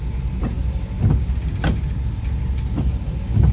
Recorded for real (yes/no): yes